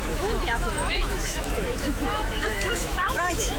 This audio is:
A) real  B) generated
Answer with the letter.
B